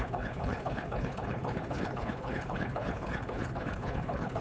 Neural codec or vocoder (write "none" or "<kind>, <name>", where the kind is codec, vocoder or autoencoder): codec, HILCodec